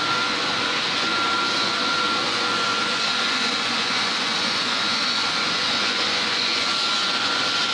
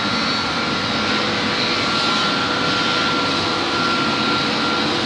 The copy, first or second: first